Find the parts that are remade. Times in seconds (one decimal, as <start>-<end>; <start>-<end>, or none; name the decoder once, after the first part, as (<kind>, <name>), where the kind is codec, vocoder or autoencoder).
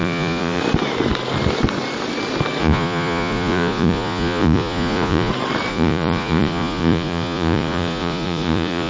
0.0-0.6 (vocoder, Vocos); 2.6-5.3; 5.7-8.9